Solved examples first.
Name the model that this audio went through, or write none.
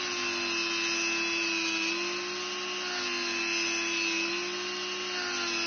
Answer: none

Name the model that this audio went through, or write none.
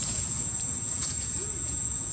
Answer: vocoder, Vocos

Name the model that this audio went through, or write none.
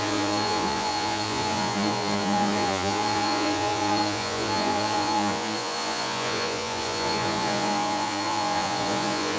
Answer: vocoder, Vocos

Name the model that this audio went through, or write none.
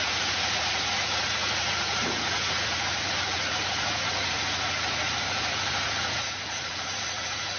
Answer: vocoder, Vocos